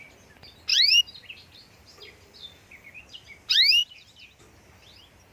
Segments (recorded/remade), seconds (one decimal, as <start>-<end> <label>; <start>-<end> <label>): 0.0-0.7 recorded; 0.7-3.0 remade; 3.0-3.8 recorded; 3.8-4.4 remade; 4.4-5.3 recorded

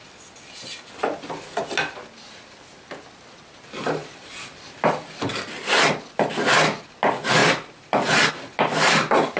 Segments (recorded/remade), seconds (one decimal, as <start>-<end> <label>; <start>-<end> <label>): 0.0-4.0 recorded; 4.0-5.9 remade; 5.9-7.4 recorded; 7.4-8.3 remade; 8.3-9.4 recorded

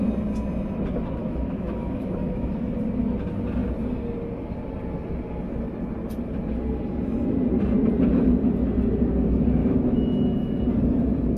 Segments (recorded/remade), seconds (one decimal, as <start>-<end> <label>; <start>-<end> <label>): 0.0-1.2 recorded; 1.2-2.7 remade; 2.7-9.6 recorded; 9.6-10.6 remade; 10.6-11.4 recorded

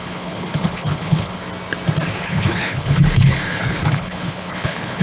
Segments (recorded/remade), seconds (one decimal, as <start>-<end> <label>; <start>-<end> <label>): 0.0-1.4 remade; 1.4-2.2 recorded; 2.2-5.0 remade

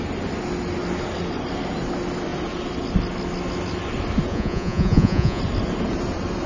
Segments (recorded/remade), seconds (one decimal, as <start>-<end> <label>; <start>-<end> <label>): 0.0-4.3 recorded; 4.3-5.4 remade; 5.4-6.5 recorded

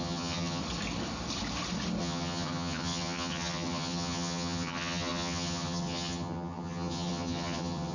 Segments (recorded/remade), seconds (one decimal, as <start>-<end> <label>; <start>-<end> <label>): 0.0-0.6 remade; 0.6-2.0 recorded; 2.0-7.9 remade

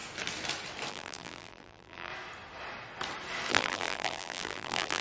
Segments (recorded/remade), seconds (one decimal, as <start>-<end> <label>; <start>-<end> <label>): 0.0-0.9 recorded; 0.9-2.1 remade; 2.1-3.5 recorded; 3.5-5.0 remade

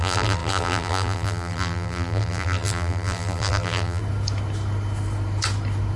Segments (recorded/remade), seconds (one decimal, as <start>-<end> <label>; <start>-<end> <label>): 0.0-4.0 remade; 4.0-6.0 recorded